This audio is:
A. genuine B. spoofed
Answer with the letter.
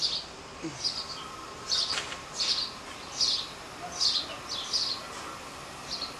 A